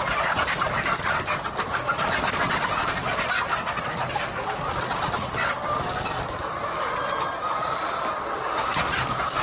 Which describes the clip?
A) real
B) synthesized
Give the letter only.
A